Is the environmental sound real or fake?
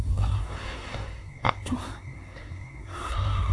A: fake